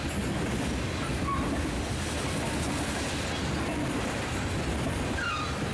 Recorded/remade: recorded